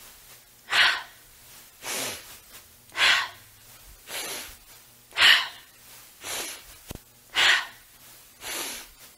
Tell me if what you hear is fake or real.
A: real